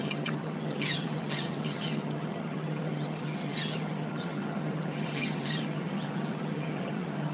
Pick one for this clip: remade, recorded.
remade